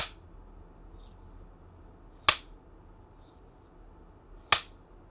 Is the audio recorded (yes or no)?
yes